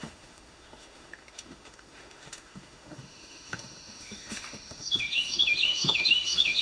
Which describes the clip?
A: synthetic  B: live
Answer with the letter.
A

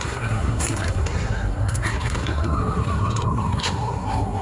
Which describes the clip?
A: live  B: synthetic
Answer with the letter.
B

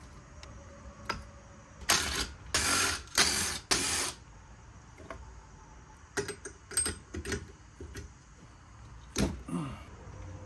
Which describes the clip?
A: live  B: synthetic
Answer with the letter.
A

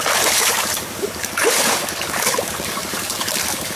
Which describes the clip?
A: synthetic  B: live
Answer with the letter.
A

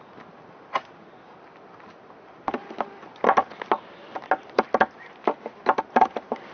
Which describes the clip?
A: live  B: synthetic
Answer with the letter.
A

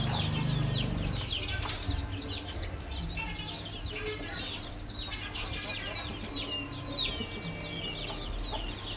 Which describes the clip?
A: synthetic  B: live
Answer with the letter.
B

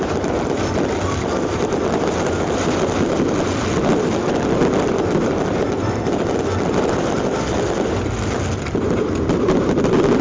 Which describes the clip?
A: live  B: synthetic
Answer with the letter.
A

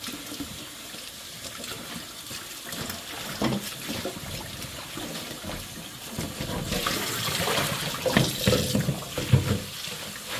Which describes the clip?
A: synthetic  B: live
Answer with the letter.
B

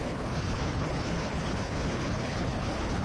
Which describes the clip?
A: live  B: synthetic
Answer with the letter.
B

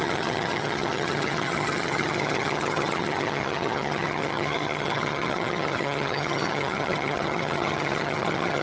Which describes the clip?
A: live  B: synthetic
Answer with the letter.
B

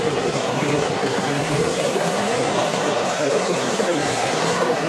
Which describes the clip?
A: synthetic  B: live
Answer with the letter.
A